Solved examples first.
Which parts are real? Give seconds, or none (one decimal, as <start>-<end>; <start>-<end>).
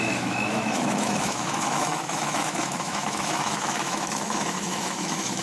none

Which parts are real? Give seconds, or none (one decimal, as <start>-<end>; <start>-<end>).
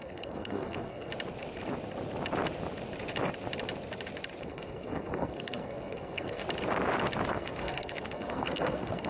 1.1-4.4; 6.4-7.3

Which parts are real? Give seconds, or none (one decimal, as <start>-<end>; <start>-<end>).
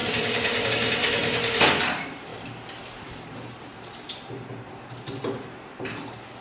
0.0-0.7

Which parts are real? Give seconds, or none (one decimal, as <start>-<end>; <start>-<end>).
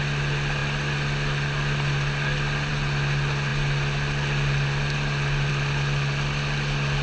0.0-7.0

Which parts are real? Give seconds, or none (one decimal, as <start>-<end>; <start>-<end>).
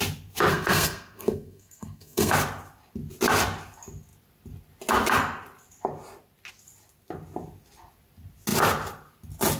0.0-0.5; 2.3-9.6